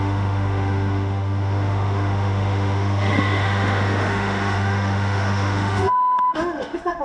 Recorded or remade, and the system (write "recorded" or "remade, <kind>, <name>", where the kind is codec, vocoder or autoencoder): remade, autoencoder, DAC-VAE